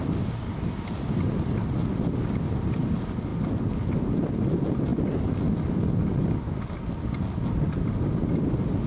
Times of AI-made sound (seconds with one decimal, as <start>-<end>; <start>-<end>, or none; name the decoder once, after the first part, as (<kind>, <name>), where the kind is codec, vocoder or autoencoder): none